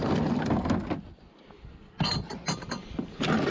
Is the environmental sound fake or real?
real